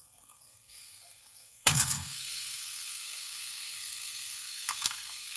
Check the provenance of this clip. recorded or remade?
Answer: remade